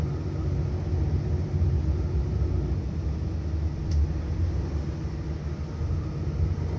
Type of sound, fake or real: real